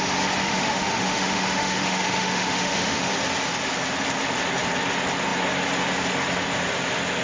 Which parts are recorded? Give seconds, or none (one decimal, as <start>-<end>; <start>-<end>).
0.0-0.4; 3.1-7.2